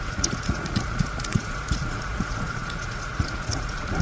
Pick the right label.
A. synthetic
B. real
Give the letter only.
A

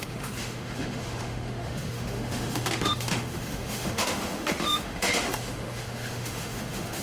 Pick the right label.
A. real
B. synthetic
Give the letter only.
B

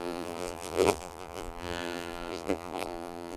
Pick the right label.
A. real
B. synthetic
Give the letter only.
B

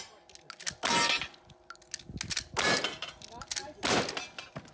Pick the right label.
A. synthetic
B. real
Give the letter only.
B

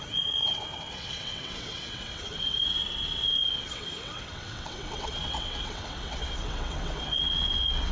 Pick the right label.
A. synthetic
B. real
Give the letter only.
A